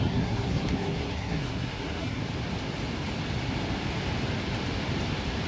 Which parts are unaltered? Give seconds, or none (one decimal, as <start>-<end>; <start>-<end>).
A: 2.2-5.5

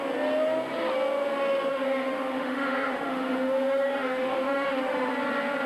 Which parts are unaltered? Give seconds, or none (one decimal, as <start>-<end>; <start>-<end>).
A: 0.0-1.7; 5.1-5.7

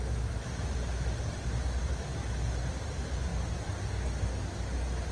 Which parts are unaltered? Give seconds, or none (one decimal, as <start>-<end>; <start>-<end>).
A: 0.0-5.1

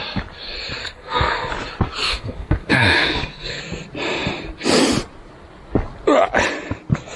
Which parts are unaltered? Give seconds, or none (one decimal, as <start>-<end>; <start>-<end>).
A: 0.0-0.8; 1.5-2.0; 3.6-7.2

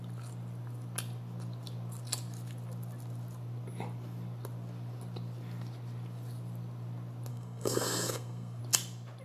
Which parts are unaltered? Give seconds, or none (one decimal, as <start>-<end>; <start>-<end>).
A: 0.0-7.3; 8.6-9.2

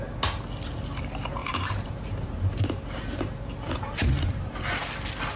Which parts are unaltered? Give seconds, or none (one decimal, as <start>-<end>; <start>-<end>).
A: 0.0-1.4; 4.6-5.4